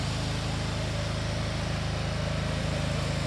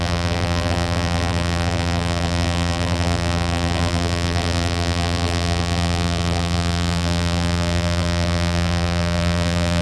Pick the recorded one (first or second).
first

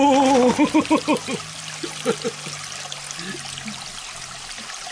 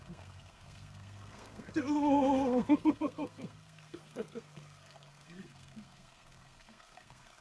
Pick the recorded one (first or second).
first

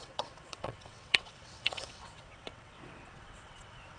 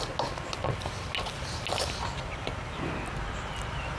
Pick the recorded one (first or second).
second